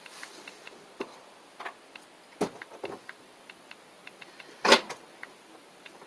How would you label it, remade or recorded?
recorded